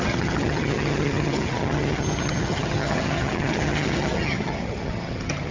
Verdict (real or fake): fake